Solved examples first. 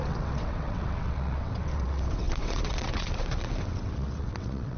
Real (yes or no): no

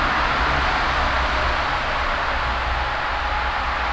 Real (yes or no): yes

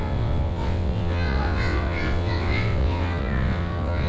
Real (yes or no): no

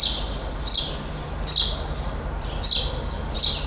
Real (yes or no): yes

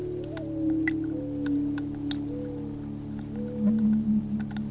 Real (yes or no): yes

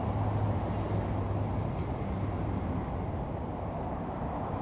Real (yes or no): yes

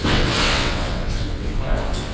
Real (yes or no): no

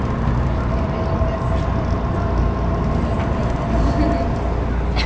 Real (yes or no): yes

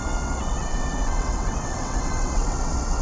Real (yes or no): no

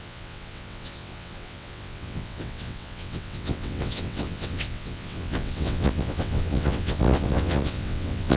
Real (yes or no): no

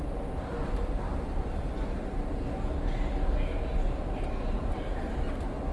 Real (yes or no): yes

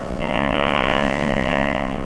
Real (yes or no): no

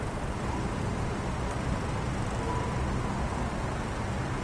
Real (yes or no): yes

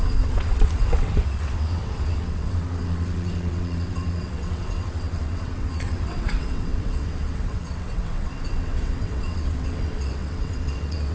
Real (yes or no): no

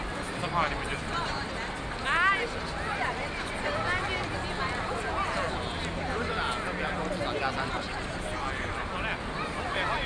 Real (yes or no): yes